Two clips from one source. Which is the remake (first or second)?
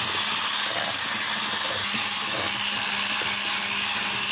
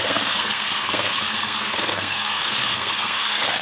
second